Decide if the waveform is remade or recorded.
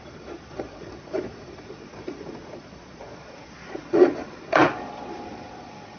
remade